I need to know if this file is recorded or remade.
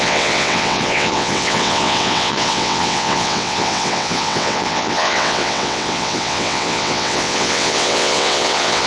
remade